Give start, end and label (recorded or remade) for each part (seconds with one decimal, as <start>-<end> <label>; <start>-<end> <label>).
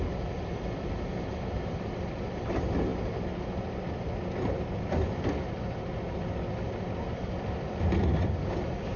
0.0-9.0 recorded